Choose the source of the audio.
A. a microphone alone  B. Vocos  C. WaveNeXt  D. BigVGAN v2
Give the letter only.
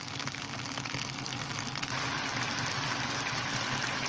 A